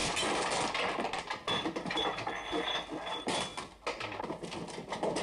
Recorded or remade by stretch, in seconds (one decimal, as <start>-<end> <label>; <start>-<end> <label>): 0.0-5.2 recorded